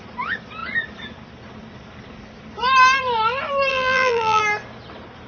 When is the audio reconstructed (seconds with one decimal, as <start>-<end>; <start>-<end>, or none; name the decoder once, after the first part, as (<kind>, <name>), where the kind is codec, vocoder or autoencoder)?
3.7-4.4 (vocoder, BigVGAN v2)